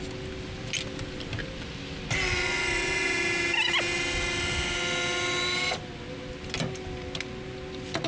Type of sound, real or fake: real